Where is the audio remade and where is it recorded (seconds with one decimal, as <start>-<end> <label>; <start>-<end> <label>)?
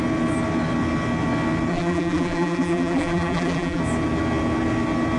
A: 0.0-1.7 recorded; 1.7-3.8 remade; 3.8-5.2 recorded